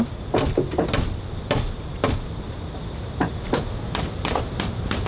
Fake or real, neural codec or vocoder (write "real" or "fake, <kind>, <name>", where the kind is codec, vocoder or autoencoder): real